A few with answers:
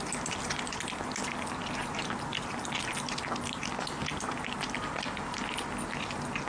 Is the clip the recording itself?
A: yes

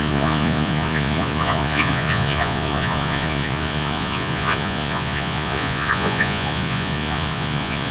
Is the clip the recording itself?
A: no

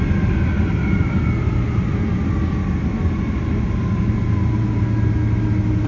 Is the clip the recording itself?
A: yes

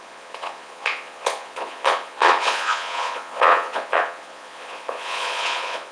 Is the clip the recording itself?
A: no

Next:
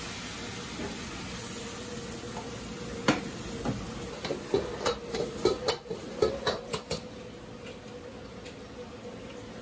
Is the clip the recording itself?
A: yes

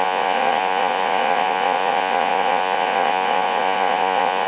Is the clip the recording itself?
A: no